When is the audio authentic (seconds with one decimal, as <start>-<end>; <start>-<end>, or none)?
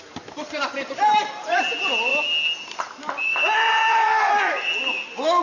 0.0-5.4